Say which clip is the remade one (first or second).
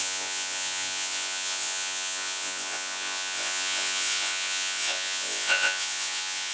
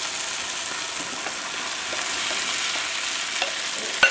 first